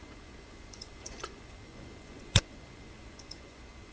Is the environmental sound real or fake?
fake